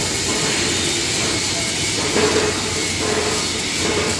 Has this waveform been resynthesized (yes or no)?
no